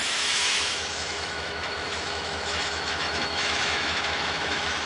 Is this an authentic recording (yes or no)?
no